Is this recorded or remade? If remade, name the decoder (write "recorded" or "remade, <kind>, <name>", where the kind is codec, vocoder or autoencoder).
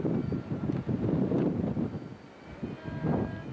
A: recorded